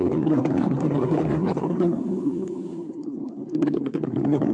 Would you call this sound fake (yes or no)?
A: yes